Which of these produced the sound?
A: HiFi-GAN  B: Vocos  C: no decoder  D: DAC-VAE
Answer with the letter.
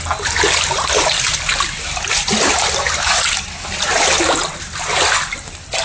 C